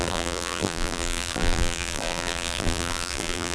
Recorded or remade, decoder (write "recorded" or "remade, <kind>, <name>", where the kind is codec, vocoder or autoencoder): remade, vocoder, BigVGAN v2